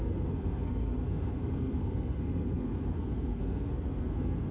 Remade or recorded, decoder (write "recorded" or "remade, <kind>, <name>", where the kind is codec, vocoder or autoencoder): remade, codec, SNAC